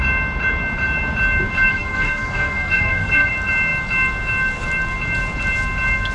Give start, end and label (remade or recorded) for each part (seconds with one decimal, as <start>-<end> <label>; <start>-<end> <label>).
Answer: 0.0-1.7 recorded; 1.7-3.3 remade; 3.3-6.1 recorded